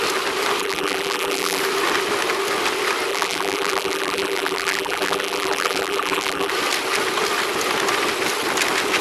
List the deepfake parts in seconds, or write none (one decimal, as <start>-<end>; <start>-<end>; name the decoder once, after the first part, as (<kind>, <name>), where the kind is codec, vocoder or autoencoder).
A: 0.6-1.6 (vocoder, BigVGAN v2); 3.1-6.5